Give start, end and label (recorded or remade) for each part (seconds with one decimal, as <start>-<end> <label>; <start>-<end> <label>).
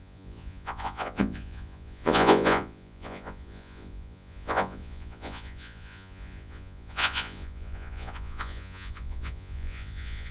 0.0-10.3 remade